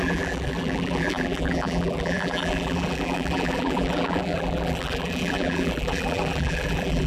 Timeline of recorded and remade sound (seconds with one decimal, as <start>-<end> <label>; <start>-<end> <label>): 0.0-7.1 remade